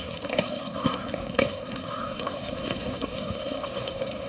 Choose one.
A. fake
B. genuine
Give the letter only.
A